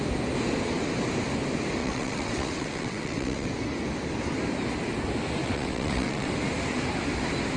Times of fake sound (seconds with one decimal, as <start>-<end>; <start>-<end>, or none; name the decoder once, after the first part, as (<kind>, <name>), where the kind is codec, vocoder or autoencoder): 1.8-3.5 (vocoder, WaveNeXt); 5.4-6.3